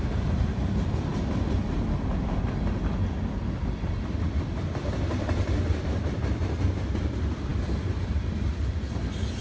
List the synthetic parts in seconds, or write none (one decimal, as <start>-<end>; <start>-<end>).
none